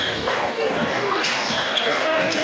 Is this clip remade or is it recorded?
remade